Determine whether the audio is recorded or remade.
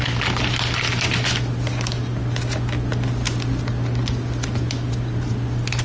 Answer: recorded